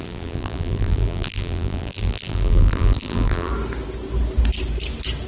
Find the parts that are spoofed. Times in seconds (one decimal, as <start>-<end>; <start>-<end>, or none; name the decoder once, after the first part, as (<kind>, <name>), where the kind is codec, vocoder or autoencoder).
0.0-3.5 (vocoder, BigVGAN v2)